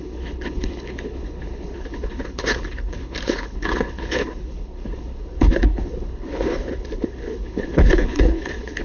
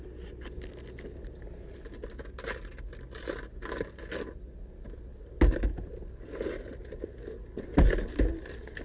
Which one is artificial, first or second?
first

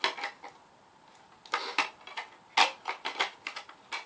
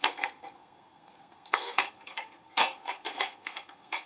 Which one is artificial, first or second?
second